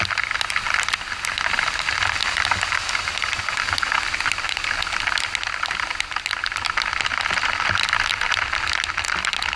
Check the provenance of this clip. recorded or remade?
recorded